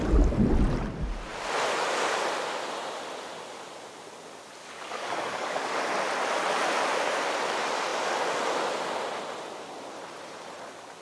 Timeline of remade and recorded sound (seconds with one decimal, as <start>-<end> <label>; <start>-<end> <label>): 0.0-4.6 recorded; 4.6-5.8 remade; 5.8-11.0 recorded